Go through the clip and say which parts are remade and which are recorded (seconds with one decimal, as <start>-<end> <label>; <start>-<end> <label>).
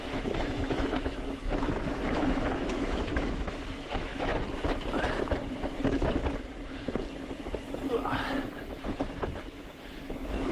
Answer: 0.0-4.3 remade; 4.3-9.4 recorded; 9.4-10.5 remade